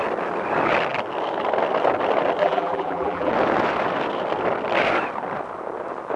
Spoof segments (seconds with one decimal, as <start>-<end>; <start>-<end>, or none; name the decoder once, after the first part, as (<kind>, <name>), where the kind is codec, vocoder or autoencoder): 2.4-3.3 (vocoder, BigVGAN v2)